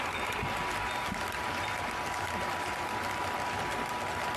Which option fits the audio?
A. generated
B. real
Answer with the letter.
B